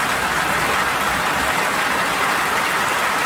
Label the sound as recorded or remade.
recorded